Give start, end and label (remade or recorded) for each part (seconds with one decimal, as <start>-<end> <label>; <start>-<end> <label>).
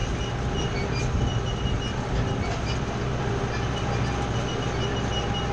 0.0-5.5 recorded